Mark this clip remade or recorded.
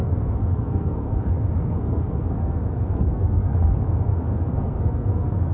remade